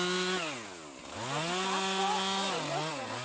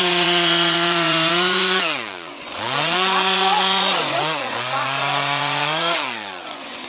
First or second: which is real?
first